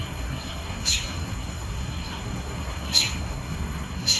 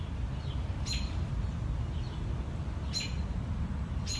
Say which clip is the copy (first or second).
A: first